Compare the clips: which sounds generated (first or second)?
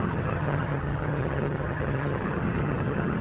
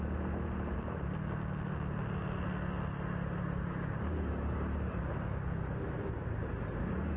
first